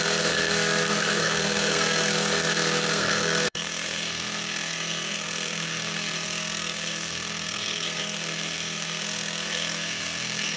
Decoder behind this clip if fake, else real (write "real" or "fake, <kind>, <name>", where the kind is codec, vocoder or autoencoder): fake, codec, SNAC